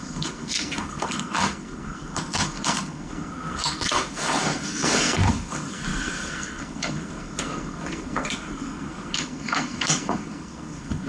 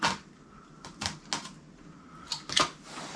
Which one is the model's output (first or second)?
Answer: first